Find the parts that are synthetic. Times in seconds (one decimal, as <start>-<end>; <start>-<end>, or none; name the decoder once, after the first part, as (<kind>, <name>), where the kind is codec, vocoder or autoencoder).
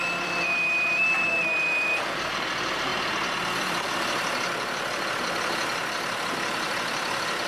0.0-2.9 (vocoder, BigVGAN v2); 3.6-7.5